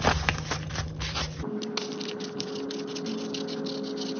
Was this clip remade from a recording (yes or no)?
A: no